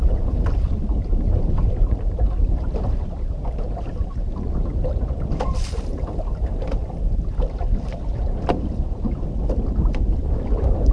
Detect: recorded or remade remade